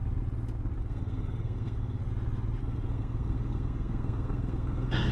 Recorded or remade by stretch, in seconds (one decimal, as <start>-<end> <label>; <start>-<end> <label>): 0.0-0.8 recorded; 0.8-2.0 remade; 2.0-2.6 recorded; 2.6-5.1 remade